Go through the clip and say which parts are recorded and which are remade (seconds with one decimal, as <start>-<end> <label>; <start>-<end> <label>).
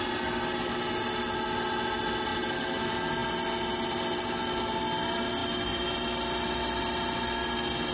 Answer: 0.0-7.9 recorded